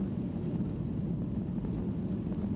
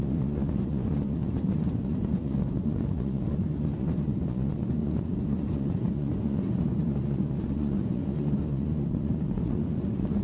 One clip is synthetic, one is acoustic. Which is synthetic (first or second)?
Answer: second